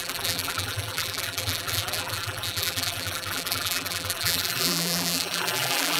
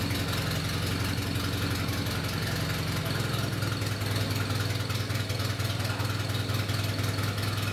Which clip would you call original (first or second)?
second